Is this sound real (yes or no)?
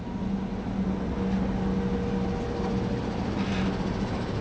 yes